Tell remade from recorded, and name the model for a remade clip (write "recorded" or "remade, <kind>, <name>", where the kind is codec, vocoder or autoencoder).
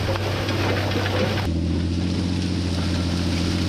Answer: recorded